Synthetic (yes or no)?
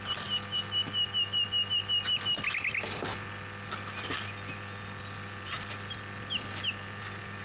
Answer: no